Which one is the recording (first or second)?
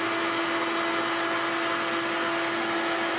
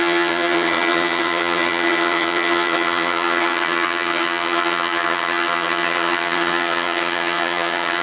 first